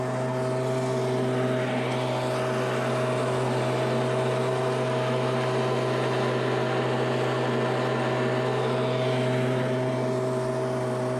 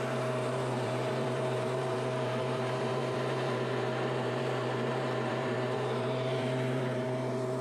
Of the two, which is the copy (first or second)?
second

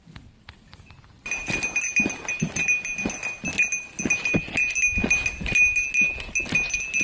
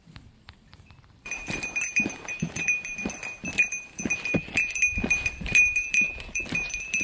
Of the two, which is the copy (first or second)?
second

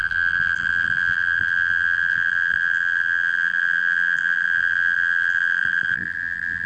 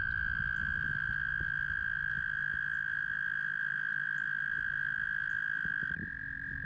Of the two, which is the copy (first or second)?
first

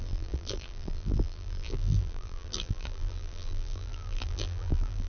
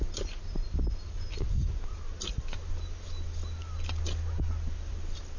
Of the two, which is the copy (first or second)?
first